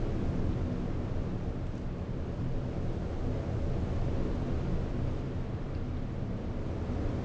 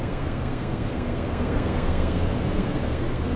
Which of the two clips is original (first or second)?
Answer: first